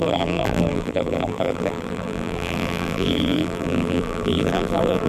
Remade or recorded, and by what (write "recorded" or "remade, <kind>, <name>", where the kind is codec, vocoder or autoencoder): remade, vocoder, BigVGAN v2